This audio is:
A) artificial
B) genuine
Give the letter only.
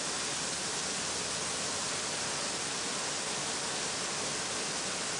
B